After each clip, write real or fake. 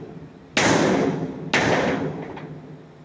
real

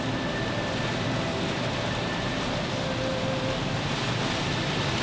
real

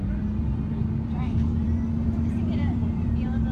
fake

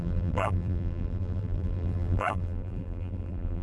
fake